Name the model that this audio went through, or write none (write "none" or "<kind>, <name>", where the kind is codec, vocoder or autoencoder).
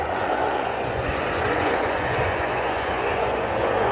vocoder, Vocos